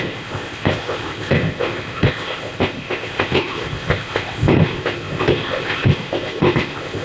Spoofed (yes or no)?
yes